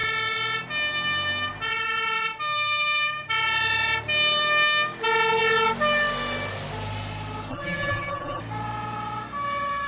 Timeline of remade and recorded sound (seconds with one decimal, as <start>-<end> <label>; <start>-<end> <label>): 0.0-7.5 recorded; 7.5-8.4 remade; 8.4-9.9 recorded